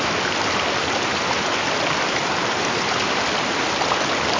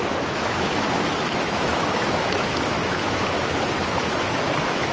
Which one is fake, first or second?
second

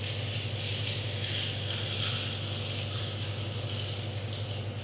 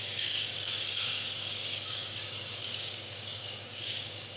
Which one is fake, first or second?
second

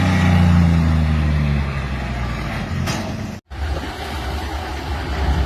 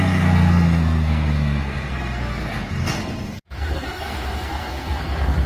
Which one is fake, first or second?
second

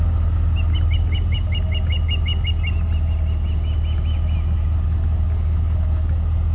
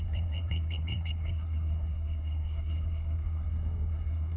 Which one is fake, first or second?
second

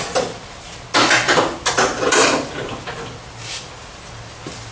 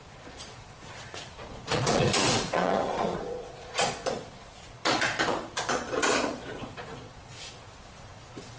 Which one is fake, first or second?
second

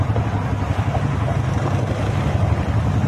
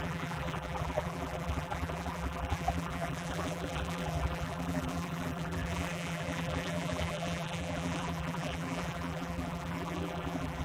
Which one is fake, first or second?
second